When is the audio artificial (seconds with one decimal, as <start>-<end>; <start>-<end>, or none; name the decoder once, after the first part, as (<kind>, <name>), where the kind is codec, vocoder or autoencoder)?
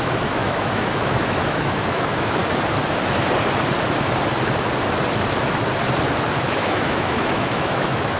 0.0-2.4 (autoencoder, DAC-VAE); 6.5-8.2